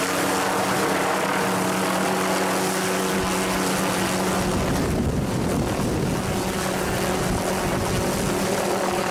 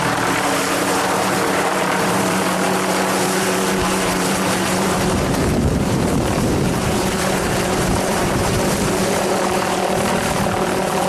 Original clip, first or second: first